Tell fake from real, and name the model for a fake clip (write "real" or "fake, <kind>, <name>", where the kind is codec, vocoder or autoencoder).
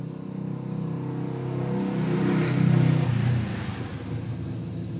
real